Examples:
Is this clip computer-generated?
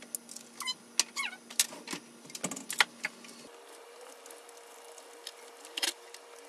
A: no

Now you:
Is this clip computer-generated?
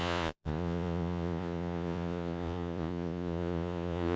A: yes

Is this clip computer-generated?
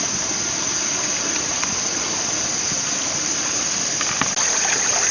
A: no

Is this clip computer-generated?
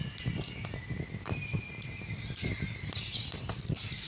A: no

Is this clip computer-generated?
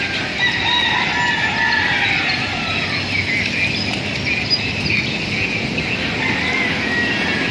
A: no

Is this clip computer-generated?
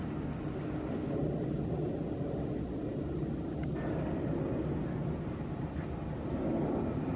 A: no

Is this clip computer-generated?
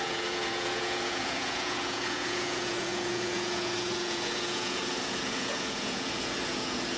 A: yes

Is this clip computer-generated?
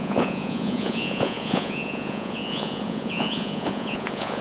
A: yes